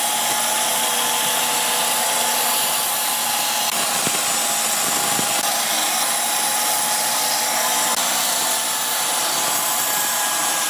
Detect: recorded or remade recorded